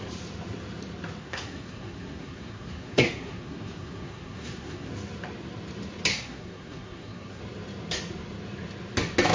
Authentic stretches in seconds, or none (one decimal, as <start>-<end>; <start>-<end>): 0.0-1.2; 4.9-6.1; 7.4-9.3